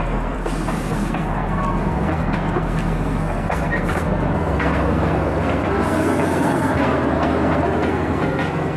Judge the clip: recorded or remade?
remade